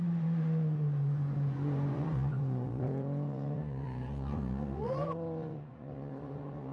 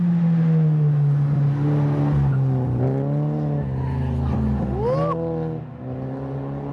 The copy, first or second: first